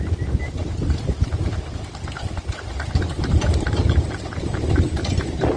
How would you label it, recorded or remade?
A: recorded